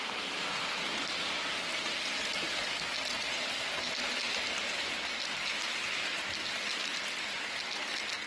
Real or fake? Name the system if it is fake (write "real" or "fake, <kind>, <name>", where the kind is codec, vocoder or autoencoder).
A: real